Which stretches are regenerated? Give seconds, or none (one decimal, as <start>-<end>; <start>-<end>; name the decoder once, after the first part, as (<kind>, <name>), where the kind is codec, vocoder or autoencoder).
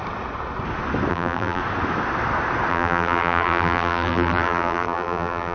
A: 1.1-1.6 (vocoder, BigVGAN v2); 2.7-5.5